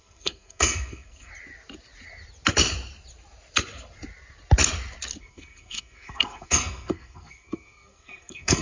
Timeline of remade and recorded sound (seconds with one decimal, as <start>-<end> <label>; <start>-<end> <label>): 0.0-1.3 remade; 1.3-5.2 recorded; 5.2-8.6 remade